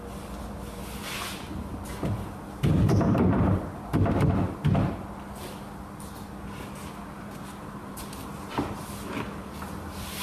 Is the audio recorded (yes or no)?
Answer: yes